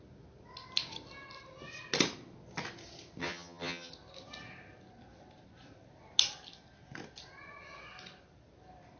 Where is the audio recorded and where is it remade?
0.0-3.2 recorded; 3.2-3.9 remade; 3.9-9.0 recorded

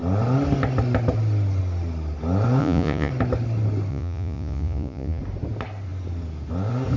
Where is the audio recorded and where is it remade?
0.0-2.6 recorded; 2.6-3.1 remade; 3.1-3.9 recorded; 3.9-5.2 remade; 5.2-7.0 recorded

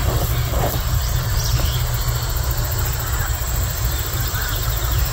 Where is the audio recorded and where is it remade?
0.0-5.1 recorded